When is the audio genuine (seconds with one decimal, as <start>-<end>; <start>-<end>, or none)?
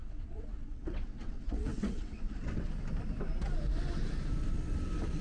2.7-5.2